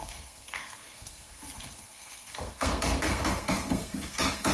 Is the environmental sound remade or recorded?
remade